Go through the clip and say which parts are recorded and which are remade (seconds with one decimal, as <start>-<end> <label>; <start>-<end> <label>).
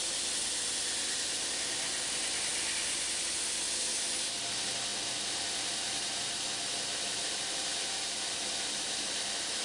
0.0-9.6 recorded